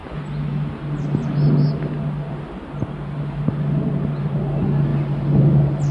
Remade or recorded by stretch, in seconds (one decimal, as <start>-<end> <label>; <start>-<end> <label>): 0.0-5.9 recorded